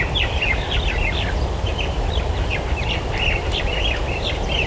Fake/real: fake